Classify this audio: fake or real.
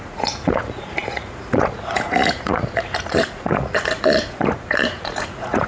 fake